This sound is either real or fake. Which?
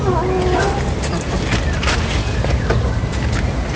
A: real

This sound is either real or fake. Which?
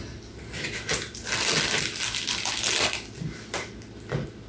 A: real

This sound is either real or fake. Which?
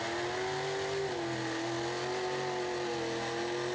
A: real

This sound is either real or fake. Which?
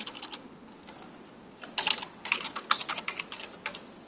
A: real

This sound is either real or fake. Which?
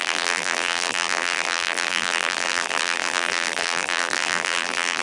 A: fake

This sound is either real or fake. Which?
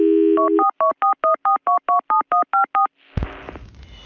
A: real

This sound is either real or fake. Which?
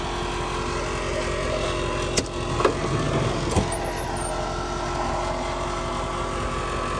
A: real